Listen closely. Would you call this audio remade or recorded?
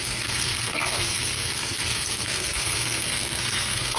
remade